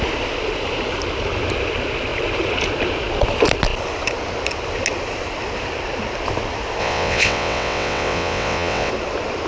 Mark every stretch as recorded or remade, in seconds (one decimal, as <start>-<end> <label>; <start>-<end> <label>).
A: 0.0-6.8 recorded; 6.8-8.9 remade; 8.9-9.5 recorded